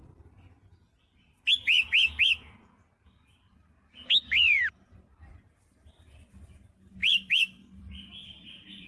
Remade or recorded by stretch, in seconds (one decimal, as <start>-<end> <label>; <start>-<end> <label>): 0.0-4.7 recorded; 4.7-8.9 remade